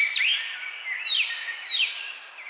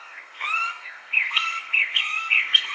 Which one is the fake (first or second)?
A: second